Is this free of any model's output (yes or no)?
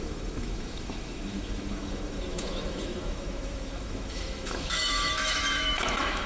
no